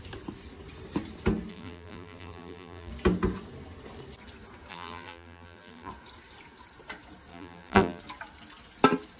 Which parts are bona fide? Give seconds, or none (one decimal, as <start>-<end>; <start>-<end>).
0.0-1.5; 2.9-4.7; 5.9-7.3; 8.0-9.2